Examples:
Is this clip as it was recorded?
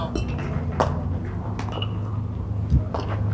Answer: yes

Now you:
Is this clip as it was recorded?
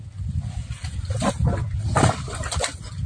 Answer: yes